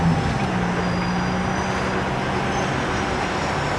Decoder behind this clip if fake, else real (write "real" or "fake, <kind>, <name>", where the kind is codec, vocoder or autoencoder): real